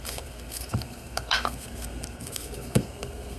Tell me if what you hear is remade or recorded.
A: remade